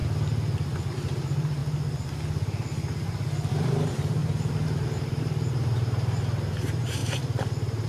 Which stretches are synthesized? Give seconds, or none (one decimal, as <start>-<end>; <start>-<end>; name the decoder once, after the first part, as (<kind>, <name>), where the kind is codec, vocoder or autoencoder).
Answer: 0.9-1.6 (vocoder, BigVGAN v2); 3.5-7.0